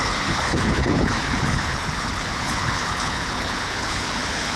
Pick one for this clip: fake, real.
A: fake